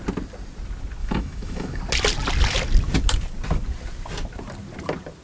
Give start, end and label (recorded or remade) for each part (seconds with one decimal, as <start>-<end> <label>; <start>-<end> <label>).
0.0-1.0 recorded; 1.0-1.8 remade; 1.8-5.2 recorded